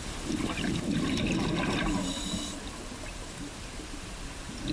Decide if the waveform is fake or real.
real